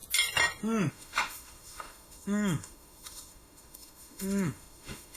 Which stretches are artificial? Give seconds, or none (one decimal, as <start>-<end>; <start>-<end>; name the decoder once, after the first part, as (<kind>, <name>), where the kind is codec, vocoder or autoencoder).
0.9-5.2 (autoencoder, DAC-VAE)